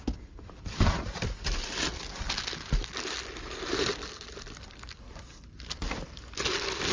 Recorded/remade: recorded